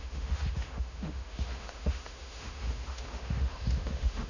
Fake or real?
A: fake